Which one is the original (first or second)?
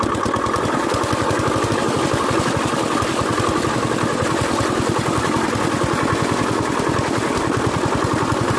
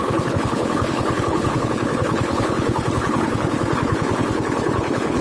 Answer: first